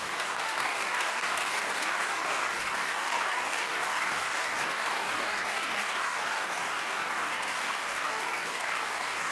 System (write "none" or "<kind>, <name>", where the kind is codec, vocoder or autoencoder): codec, DAC